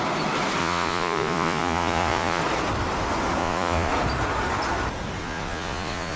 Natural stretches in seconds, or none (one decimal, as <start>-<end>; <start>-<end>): 0.0-0.6; 2.4-3.4; 3.9-5.2